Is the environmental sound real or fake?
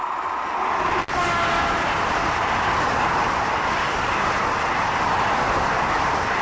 real